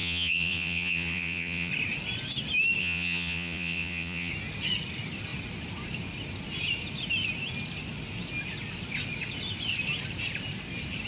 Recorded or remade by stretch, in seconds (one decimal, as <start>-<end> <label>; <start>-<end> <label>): 0.0-1.7 remade; 1.7-2.8 recorded; 2.8-4.3 remade; 4.3-11.1 recorded